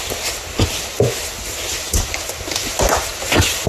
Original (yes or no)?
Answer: yes